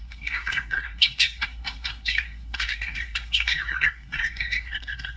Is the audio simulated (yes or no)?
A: yes